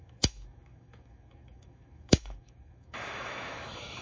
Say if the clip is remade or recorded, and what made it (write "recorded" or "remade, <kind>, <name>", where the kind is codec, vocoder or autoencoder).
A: remade, autoencoder, DAC-VAE